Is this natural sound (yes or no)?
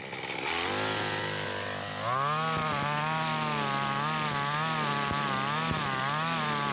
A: yes